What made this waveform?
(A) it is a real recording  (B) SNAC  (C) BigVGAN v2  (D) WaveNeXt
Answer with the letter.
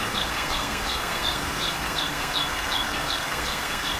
B